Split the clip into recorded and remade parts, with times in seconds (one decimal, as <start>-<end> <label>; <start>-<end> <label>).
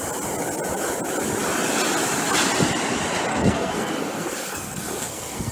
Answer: 0.0-3.3 recorded; 3.3-5.5 remade